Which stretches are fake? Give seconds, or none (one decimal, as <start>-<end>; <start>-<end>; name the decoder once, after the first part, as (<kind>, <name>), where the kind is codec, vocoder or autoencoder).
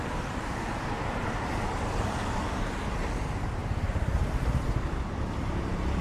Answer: 0.0-6.0 (vocoder, BigVGAN v2)